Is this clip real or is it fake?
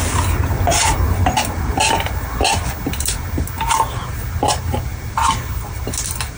real